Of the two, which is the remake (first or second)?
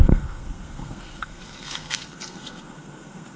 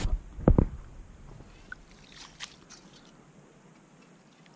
first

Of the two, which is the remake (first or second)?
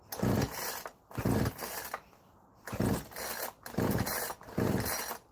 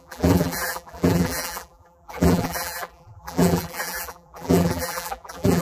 second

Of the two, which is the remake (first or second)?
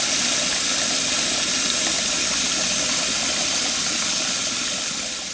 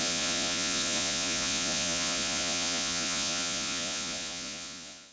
second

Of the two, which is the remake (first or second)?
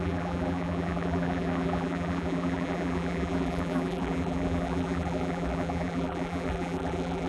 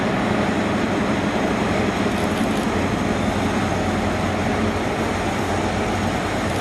first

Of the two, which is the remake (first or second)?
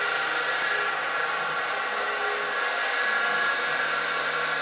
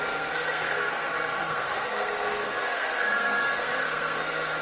second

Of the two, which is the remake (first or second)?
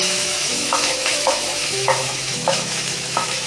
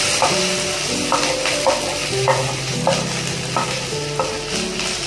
first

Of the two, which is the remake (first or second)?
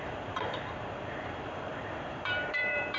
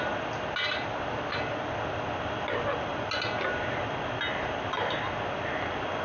first